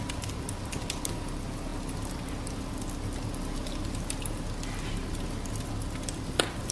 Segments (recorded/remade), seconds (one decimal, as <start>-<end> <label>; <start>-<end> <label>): 0.0-6.7 recorded